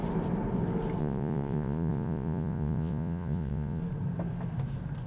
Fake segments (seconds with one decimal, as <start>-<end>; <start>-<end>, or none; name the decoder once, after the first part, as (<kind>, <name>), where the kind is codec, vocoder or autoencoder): 1.0-3.8 (vocoder, Vocos)